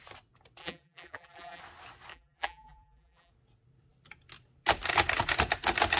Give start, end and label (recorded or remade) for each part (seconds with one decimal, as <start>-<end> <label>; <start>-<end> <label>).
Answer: 0.0-0.6 recorded; 0.6-1.6 remade; 1.6-2.1 recorded; 2.1-3.3 remade; 3.3-6.0 recorded